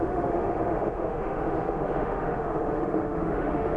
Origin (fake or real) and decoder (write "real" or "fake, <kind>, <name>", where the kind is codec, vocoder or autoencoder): fake, autoencoder, DAC-VAE